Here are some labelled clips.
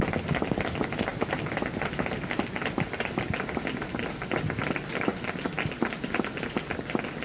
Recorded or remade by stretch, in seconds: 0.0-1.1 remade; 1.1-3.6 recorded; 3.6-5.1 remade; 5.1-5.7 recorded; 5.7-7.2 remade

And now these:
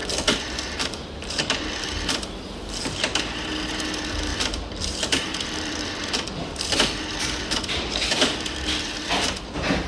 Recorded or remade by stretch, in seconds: 0.0-1.8 remade; 1.8-4.3 recorded; 4.3-9.5 remade; 9.5-9.9 recorded

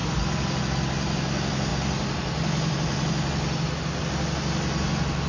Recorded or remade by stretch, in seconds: 0.0-5.3 recorded

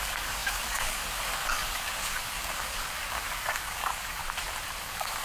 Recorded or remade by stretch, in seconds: 0.0-4.2 remade; 4.2-4.8 recorded; 4.8-5.2 remade